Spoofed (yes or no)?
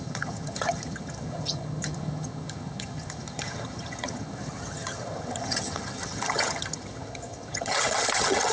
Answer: yes